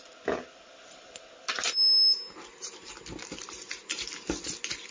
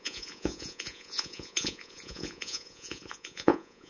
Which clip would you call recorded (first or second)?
first